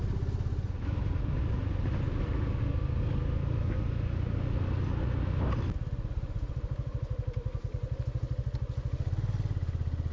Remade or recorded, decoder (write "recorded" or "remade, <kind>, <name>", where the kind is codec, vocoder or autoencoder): recorded